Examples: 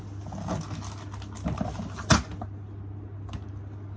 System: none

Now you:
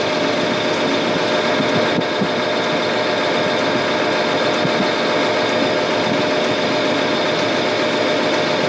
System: none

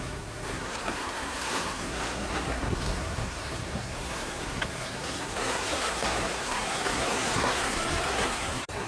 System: codec, SNAC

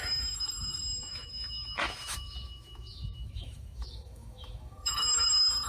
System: autoencoder, DAC-VAE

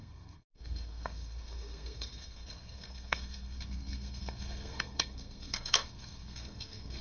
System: codec, SNAC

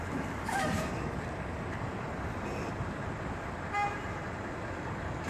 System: vocoder, BigVGAN v2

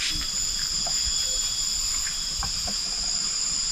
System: vocoder, BigVGAN v2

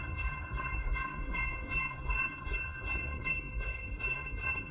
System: codec, SNAC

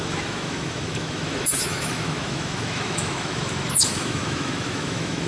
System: autoencoder, DAC-VAE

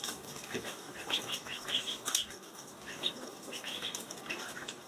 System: codec, DAC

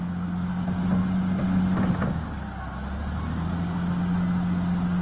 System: none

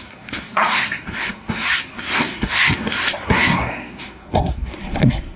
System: codec, SNAC